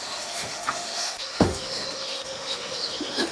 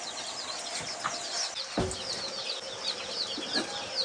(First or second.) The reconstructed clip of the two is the first